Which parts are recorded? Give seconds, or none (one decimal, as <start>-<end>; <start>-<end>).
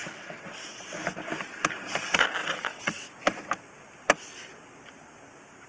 0.8-2.4; 3.1-5.7